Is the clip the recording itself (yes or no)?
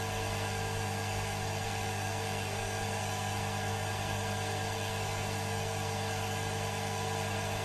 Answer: no